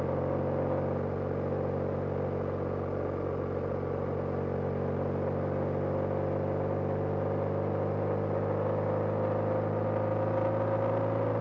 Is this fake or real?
real